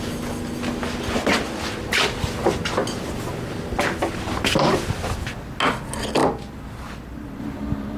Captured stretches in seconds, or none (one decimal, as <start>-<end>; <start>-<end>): 0.0-8.0